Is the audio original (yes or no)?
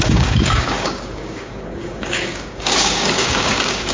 no